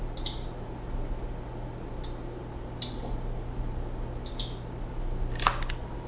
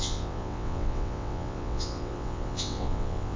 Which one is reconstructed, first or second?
second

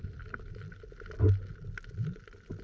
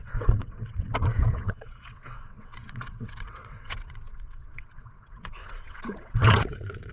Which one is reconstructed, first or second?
second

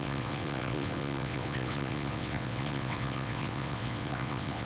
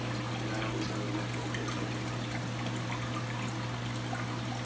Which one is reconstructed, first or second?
first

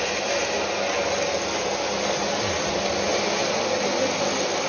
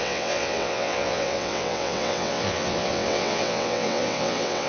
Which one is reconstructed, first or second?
second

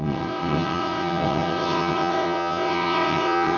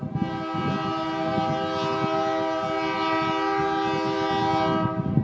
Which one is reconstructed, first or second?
first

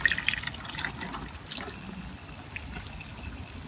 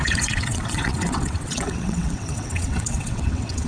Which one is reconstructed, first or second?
second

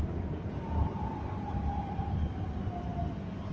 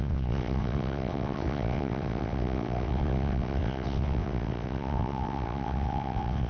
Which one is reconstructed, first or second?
second